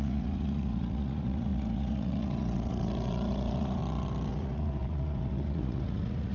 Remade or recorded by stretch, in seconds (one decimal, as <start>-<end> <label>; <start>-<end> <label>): 0.0-3.8 remade; 3.8-4.3 recorded; 4.3-6.3 remade